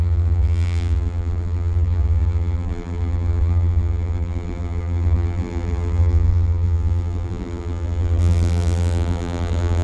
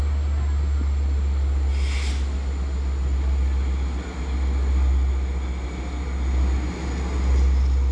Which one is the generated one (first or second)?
first